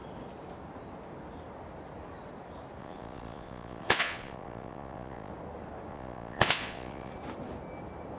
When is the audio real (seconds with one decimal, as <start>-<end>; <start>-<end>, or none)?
0.0-2.8; 5.3-5.9; 7.1-8.2